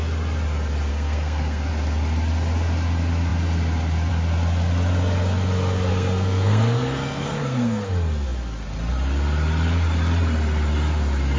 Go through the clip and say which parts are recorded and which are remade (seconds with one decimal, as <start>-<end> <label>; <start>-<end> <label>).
0.0-0.9 recorded; 0.9-1.7 remade; 1.7-5.9 recorded; 5.9-7.9 remade; 7.9-11.4 recorded